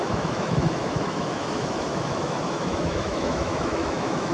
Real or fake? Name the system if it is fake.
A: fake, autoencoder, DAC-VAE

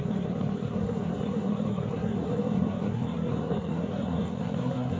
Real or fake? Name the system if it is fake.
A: fake, codec, SNAC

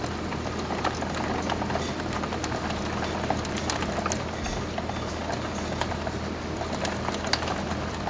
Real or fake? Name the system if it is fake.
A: real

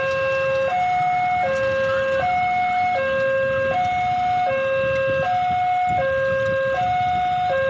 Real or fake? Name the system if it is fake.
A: real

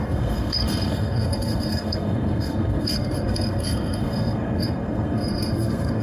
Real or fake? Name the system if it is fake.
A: fake, codec, SNAC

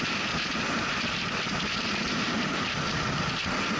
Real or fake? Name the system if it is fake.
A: fake, vocoder, BigVGAN v2